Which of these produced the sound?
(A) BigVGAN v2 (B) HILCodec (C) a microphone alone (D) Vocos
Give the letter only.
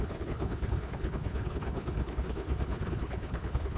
B